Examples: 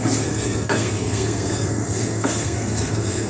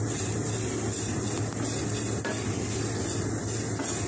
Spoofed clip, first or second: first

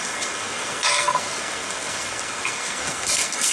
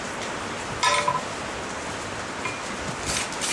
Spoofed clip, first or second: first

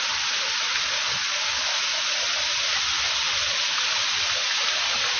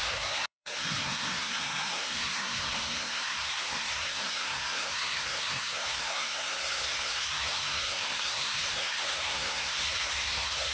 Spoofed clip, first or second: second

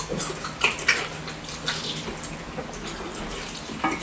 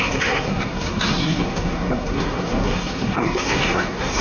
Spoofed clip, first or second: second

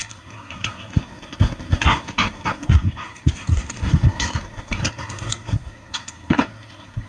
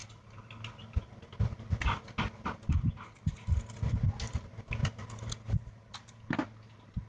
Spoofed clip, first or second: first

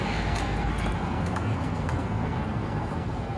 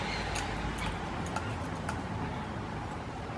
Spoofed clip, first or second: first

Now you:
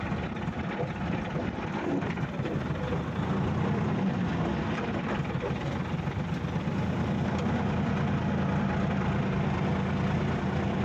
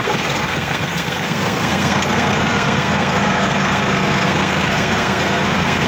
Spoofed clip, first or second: second